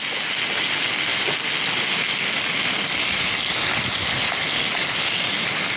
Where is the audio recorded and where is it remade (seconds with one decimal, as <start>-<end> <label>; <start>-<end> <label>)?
0.0-5.8 recorded